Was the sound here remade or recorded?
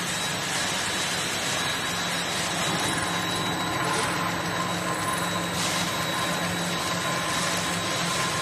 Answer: recorded